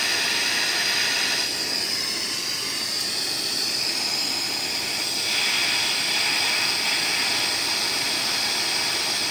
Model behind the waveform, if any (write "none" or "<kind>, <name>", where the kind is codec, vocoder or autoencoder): none